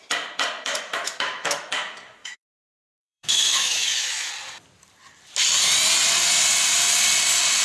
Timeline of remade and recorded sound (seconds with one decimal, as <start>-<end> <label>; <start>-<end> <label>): 0.0-0.9 recorded; 0.9-1.7 remade; 1.7-2.2 recorded; 2.2-4.3 remade; 4.3-7.6 recorded